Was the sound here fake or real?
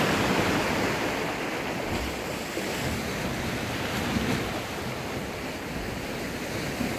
real